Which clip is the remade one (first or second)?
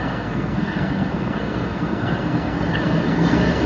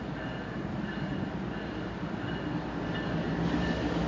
first